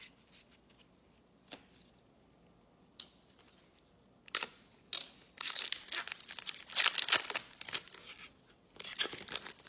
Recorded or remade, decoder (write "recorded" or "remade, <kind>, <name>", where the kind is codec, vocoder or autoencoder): recorded